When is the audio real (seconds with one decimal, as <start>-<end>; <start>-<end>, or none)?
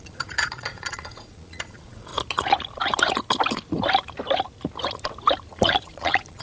2.1-5.5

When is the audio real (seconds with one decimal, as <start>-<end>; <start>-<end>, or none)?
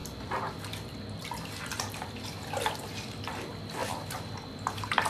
0.0-5.1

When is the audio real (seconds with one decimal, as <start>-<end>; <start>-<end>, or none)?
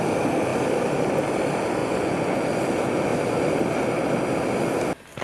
0.0-1.8; 2.4-5.2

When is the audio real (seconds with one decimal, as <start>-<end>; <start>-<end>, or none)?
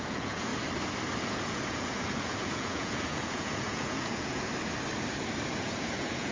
0.5-1.2; 4.5-5.5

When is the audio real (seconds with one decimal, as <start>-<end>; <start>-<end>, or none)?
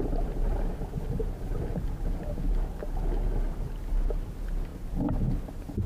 0.0-5.9